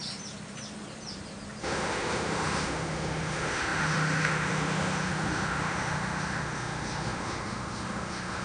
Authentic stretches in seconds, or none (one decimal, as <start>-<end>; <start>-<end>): 0.0-1.6